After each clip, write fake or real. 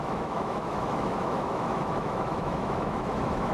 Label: fake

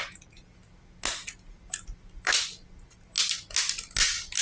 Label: real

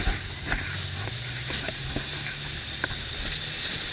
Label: real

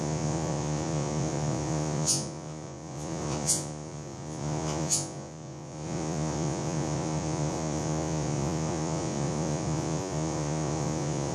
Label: fake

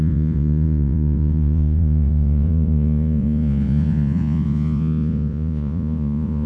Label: fake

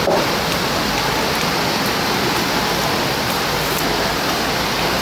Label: real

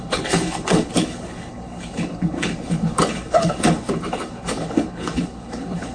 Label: fake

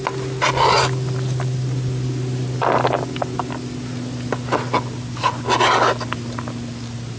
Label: real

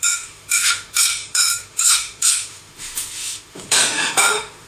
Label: fake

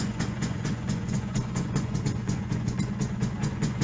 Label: fake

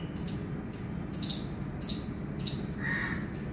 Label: real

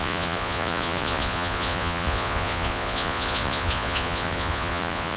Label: fake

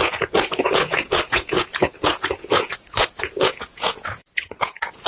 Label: fake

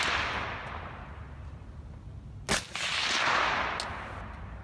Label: real